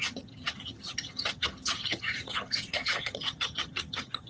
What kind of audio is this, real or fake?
fake